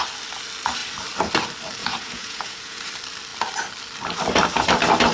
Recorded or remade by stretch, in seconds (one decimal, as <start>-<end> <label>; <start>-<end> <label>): 0.0-1.8 recorded; 1.8-2.9 remade; 2.9-5.1 recorded